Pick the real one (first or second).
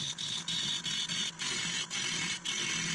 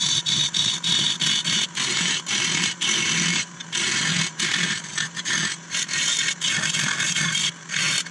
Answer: first